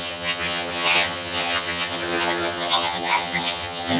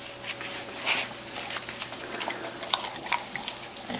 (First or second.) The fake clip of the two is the first